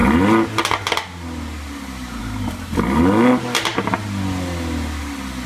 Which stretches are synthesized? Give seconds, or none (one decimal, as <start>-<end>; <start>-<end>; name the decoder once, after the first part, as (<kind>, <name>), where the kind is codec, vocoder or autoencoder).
none